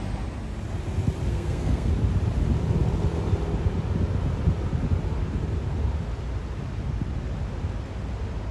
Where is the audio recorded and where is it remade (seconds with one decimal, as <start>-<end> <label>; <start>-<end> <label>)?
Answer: 0.0-1.3 recorded; 1.3-1.9 remade; 1.9-8.5 recorded